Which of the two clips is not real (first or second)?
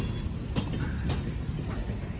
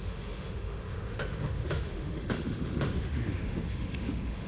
second